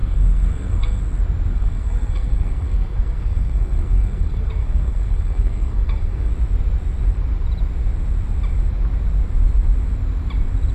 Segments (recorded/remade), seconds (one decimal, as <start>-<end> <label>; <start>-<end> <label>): 0.0-1.0 remade; 1.0-1.5 recorded; 1.5-6.3 remade; 6.3-10.7 recorded